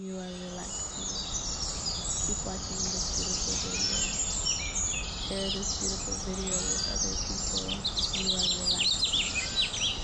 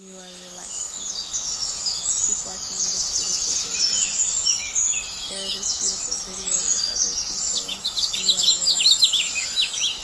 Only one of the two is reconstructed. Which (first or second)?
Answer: second